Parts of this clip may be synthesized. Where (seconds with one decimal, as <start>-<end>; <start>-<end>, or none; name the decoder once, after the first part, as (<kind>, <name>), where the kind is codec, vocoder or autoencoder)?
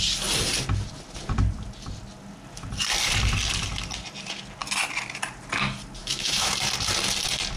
6.0-6.5 (autoencoder, DAC-VAE)